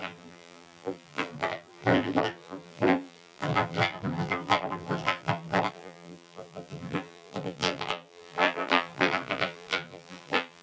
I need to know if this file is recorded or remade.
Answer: remade